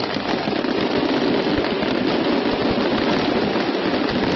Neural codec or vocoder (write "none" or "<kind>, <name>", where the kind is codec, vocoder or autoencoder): none